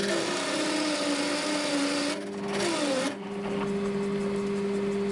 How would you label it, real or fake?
real